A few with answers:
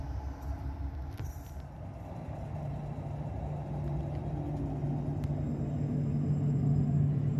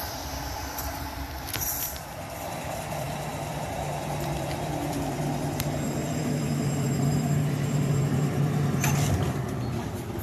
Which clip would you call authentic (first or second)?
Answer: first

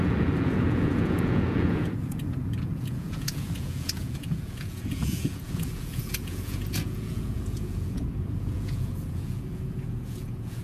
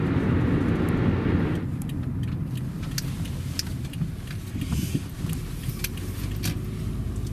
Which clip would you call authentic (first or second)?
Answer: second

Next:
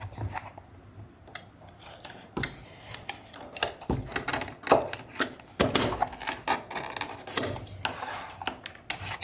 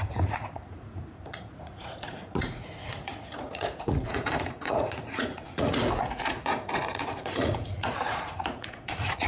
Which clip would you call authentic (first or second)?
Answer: first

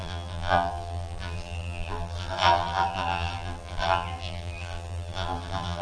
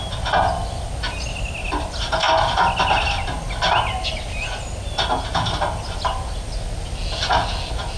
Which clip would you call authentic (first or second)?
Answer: second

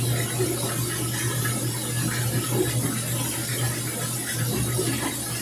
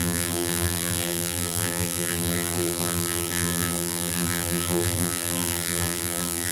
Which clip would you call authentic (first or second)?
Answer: first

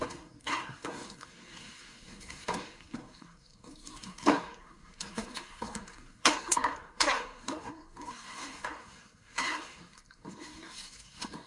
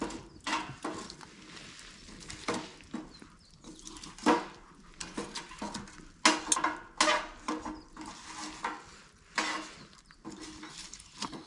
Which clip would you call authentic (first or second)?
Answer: second